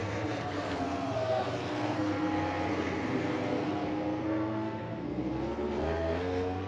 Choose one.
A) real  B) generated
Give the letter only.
B